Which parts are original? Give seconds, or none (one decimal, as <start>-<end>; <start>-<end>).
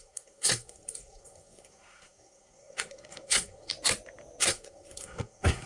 3.7-4.4